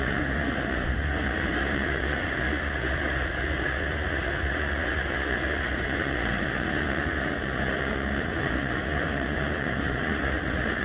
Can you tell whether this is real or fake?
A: fake